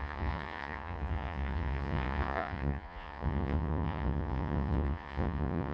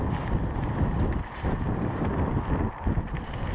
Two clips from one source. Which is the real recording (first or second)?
second